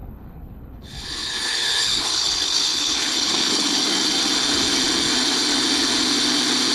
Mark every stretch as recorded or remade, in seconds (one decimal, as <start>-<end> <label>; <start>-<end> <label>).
0.0-3.8 remade; 3.8-6.7 recorded